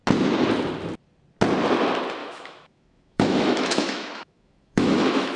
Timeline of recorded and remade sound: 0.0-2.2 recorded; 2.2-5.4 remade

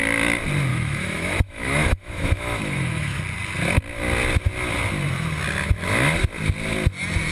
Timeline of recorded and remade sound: 0.0-0.7 recorded; 0.7-3.2 remade; 3.2-7.3 recorded

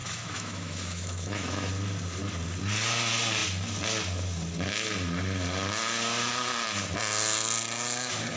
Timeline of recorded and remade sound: 0.0-1.7 remade; 1.7-8.4 recorded

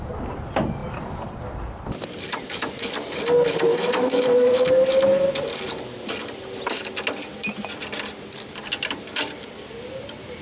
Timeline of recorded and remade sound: 0.0-3.7 recorded; 3.7-4.7 remade; 4.7-10.4 recorded

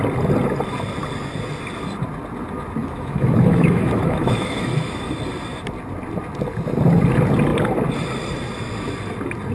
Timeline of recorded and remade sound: 0.0-2.8 recorded; 2.8-5.1 remade; 5.1-9.5 recorded

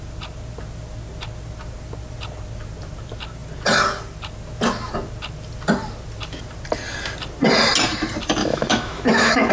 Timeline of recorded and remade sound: 0.0-8.4 recorded; 8.4-9.5 remade